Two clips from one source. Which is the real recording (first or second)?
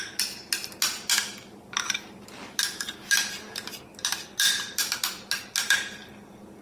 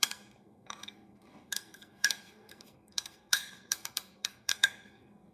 first